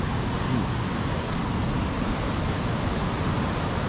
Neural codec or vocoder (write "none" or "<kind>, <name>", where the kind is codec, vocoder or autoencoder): none